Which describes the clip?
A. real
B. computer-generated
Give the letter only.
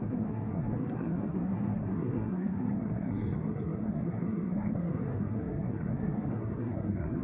B